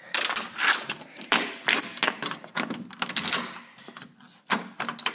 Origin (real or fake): real